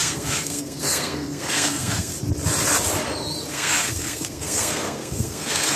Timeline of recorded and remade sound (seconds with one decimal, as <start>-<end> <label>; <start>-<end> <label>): 0.0-2.1 remade; 2.1-3.5 recorded; 3.5-5.8 remade